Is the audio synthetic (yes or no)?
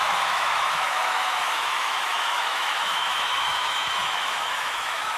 yes